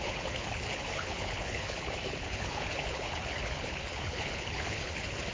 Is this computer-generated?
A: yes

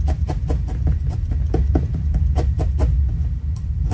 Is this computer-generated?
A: no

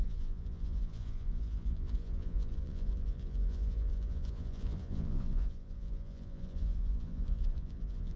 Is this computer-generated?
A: yes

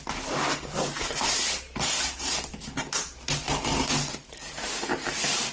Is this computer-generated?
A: no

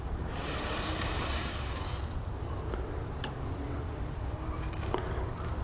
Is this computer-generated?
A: yes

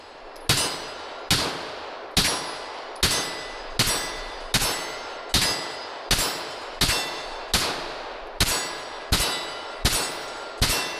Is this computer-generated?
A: no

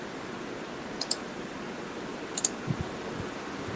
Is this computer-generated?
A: no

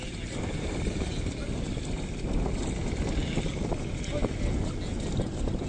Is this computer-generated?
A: no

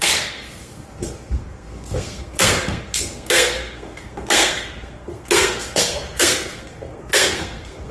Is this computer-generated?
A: yes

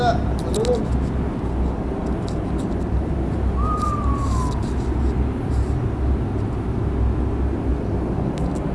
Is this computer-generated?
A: no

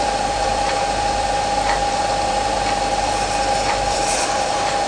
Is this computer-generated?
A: yes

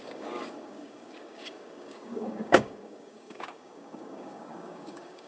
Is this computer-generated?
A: yes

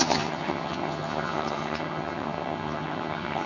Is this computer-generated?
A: yes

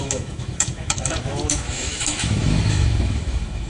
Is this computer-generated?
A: yes